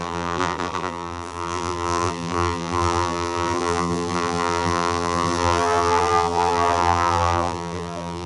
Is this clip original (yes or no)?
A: no